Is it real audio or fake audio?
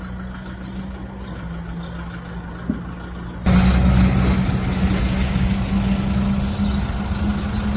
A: real